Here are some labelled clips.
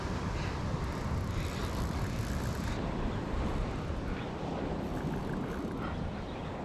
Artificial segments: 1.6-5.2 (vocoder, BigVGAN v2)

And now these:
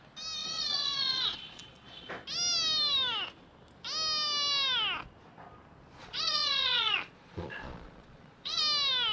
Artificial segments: 0.4-2.1 (vocoder, Vocos); 6.0-8.6

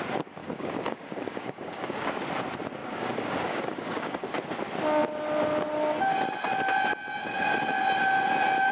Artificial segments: 0.4-2.2 (codec, DAC); 2.8-4.3

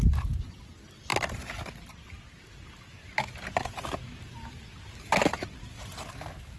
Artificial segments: none